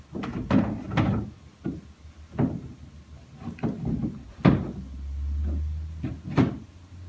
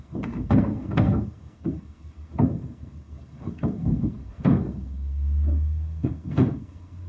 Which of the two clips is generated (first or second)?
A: second